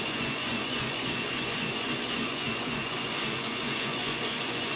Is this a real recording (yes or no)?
no